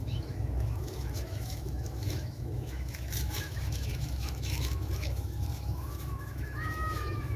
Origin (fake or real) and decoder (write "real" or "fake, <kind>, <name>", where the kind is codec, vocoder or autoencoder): fake, autoencoder, DAC-VAE